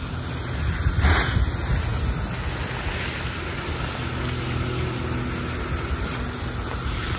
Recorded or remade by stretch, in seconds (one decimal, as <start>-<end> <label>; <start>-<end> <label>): 0.0-7.2 recorded